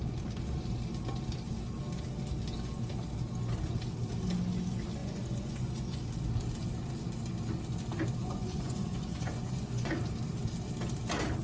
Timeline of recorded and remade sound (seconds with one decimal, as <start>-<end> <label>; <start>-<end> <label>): 0.0-5.0 recorded; 5.0-6.0 remade; 6.0-8.2 recorded; 8.2-9.9 remade; 9.9-11.4 recorded